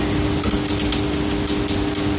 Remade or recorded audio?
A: recorded